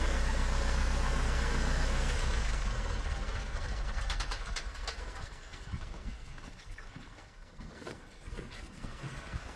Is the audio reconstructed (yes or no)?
yes